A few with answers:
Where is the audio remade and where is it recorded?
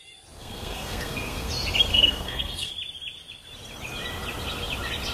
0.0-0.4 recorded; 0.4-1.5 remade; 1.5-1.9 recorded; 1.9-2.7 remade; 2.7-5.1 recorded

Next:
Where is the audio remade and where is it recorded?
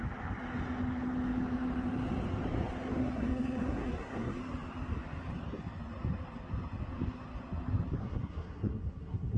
0.0-3.0 recorded; 3.0-4.4 remade; 4.4-8.0 recorded; 8.0-9.4 remade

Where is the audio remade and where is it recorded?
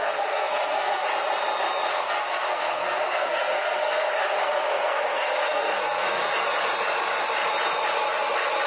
0.0-1.1 remade; 1.1-1.9 recorded; 1.9-6.2 remade; 6.2-8.7 recorded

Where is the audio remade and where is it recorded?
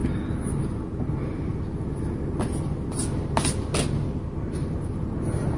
0.0-5.6 recorded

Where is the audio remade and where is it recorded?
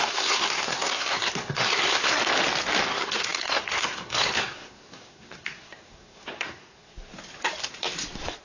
0.0-2.2 remade; 2.2-2.9 recorded; 2.9-7.1 remade; 7.1-8.4 recorded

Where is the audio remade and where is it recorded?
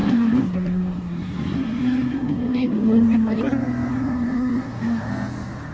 0.0-3.4 remade; 3.4-3.9 recorded; 3.9-5.1 remade; 5.1-5.7 recorded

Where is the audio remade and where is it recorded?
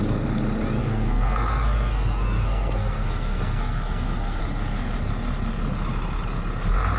0.0-0.8 recorded; 0.8-4.4 remade; 4.4-7.0 recorded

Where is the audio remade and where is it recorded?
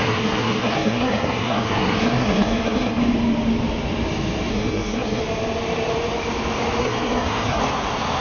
0.0-3.0 remade; 3.0-4.5 recorded; 4.5-5.2 remade; 5.2-6.8 recorded; 6.8-7.6 remade; 7.6-8.2 recorded